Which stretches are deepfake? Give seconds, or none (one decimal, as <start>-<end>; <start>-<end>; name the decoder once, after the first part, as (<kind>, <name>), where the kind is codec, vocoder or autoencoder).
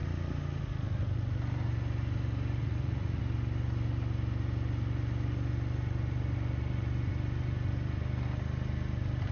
2.6-3.2 (vocoder, Vocos)